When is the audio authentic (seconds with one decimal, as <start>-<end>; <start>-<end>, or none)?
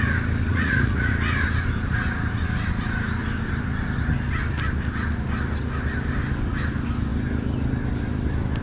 0.0-0.5; 1.1-8.6